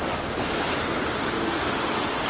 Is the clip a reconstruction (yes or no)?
no